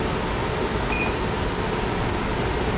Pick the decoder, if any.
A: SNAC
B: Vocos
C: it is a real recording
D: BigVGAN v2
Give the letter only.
C